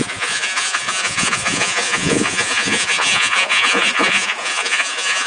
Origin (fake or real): fake